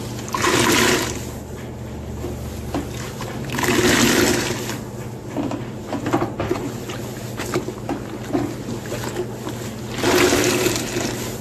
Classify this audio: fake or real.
real